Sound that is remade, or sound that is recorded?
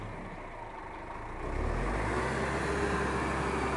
recorded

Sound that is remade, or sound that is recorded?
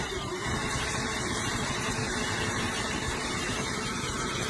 remade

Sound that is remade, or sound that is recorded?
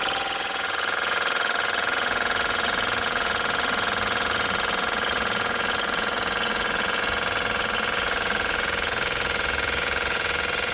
remade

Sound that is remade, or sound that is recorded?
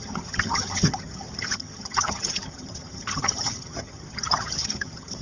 remade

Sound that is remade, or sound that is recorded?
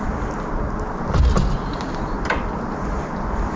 recorded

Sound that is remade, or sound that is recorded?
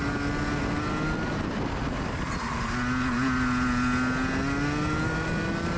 recorded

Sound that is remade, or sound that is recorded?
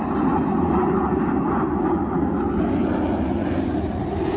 recorded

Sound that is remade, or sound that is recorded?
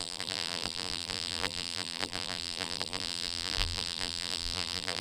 remade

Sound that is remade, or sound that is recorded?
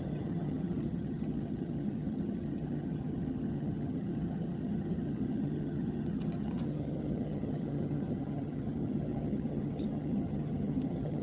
remade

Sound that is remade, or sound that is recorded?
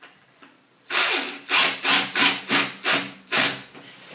recorded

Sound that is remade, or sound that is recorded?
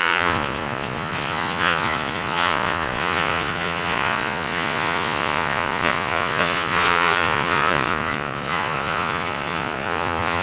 remade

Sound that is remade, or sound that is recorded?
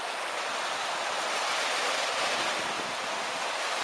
recorded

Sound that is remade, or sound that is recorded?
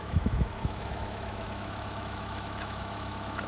remade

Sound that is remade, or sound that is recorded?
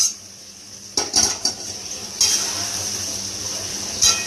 recorded